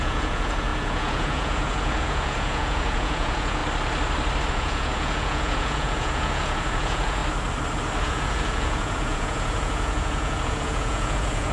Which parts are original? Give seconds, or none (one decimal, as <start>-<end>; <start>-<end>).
3.6-4.5; 7.2-8.0

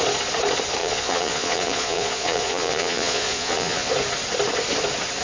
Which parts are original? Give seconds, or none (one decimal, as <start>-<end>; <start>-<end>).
0.0-0.8; 3.9-5.2